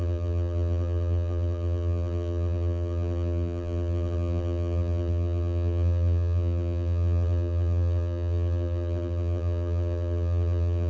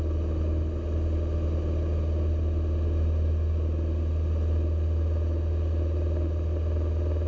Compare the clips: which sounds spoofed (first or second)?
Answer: first